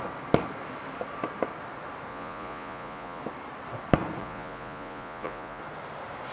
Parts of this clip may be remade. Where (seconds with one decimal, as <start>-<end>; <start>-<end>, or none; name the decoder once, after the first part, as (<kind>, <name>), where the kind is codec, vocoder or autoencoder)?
2.1-3.2 (vocoder, Vocos); 4.2-5.6